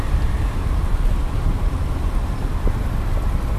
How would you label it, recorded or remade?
recorded